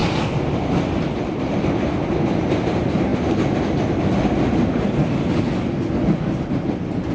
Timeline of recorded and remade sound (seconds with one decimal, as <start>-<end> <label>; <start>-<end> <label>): 0.0-7.1 recorded